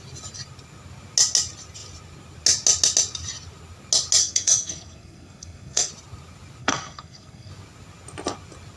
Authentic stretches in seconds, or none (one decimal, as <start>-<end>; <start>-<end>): 0.0-4.2; 5.9-6.6; 7.5-8.8